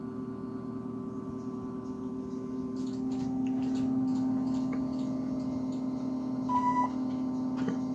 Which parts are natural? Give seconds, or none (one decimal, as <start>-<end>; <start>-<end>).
0.0-7.9